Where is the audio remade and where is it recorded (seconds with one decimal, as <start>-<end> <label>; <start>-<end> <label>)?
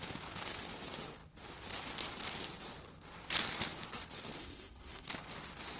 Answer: 0.0-4.4 recorded; 4.4-5.1 remade; 5.1-5.8 recorded